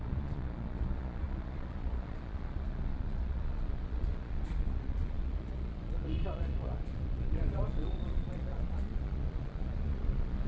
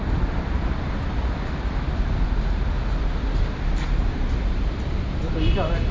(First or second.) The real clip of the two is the second